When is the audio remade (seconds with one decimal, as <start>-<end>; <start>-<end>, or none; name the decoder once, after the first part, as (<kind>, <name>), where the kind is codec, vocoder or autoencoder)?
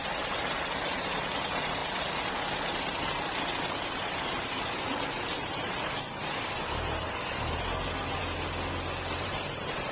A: 0.0-1.8 (vocoder, BigVGAN v2); 3.6-8.2; 9.1-9.9